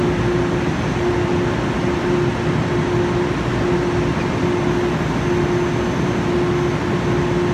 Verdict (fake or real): real